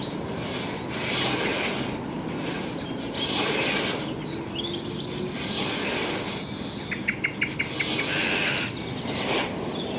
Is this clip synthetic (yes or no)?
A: no